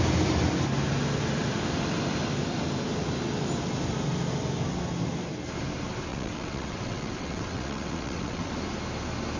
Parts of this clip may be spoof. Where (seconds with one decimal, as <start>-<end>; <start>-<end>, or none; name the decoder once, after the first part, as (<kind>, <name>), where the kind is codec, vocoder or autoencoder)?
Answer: 6.1-8.5 (vocoder, WaveNeXt)